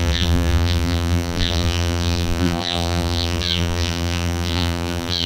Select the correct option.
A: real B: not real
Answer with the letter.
B